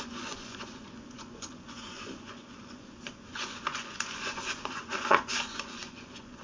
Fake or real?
fake